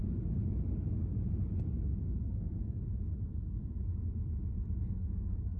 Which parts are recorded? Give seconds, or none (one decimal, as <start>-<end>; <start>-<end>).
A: 0.0-2.2; 2.8-4.8